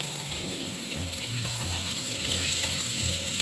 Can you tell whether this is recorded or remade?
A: remade